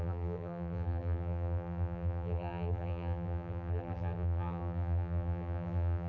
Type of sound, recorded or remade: remade